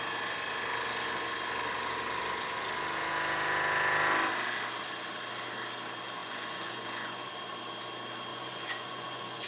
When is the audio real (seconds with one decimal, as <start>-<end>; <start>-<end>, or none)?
0.0-6.2; 7.3-8.3